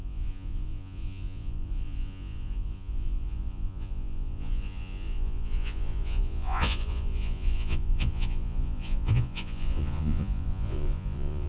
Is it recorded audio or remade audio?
remade